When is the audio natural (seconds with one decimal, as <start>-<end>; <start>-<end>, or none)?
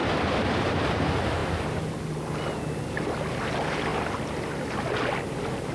1.0-1.4; 2.4-5.7